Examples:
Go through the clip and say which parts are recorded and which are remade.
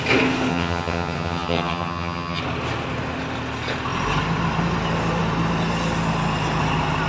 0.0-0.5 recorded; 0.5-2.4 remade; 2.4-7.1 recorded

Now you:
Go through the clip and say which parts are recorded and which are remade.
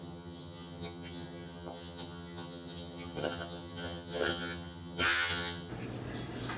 0.0-5.7 remade; 5.7-6.6 recorded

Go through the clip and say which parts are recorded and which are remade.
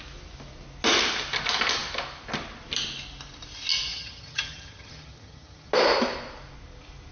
0.0-3.9 recorded; 3.9-5.7 remade; 5.7-7.1 recorded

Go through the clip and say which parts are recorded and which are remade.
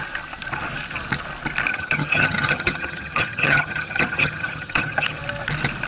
0.0-1.7 recorded; 1.7-5.2 remade; 5.2-5.9 recorded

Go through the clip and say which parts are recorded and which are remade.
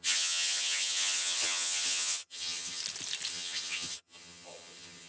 0.0-2.8 remade; 2.8-3.3 recorded; 3.3-5.1 remade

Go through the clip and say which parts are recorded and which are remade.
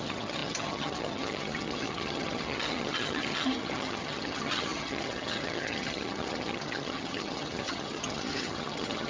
0.0-9.1 remade